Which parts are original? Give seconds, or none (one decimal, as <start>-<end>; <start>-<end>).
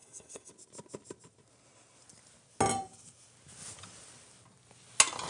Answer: 0.5-5.3